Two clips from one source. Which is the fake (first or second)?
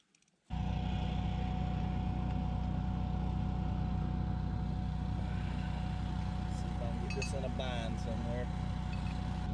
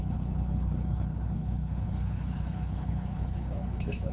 second